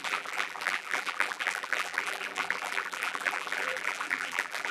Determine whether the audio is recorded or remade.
remade